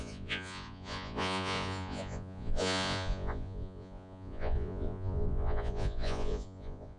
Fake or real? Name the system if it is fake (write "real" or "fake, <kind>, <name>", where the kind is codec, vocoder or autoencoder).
fake, vocoder, Vocos